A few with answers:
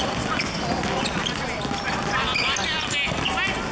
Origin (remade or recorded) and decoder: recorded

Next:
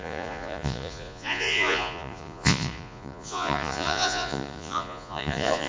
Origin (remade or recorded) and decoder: remade, vocoder, Vocos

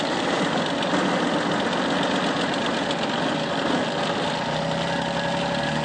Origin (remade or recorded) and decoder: recorded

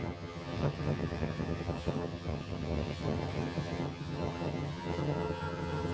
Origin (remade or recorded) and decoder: remade, vocoder, HiFi-GAN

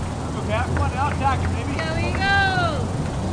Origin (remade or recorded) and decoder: recorded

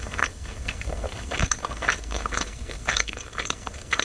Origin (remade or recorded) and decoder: remade, codec, SNAC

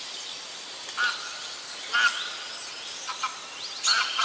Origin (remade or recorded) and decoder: recorded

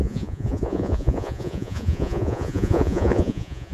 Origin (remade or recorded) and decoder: remade, vocoder, Vocos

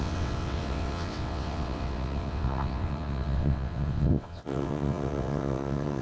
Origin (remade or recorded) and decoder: remade, vocoder, WaveNeXt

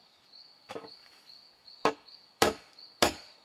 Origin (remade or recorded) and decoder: remade, codec, DAC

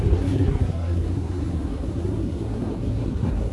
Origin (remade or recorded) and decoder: remade, codec, SNAC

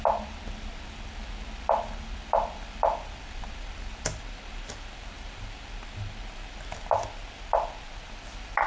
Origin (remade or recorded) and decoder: recorded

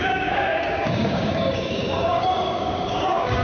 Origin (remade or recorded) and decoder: remade, codec, DAC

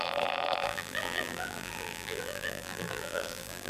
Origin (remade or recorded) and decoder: remade, vocoder, BigVGAN v2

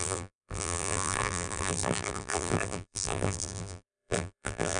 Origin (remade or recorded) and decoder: remade, vocoder, BigVGAN v2